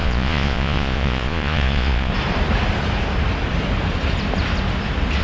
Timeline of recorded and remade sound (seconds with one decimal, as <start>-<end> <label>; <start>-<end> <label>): 0.0-2.1 remade; 2.1-5.2 recorded